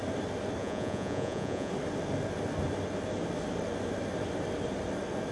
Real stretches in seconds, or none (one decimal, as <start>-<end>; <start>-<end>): 0.0-0.6; 1.7-5.3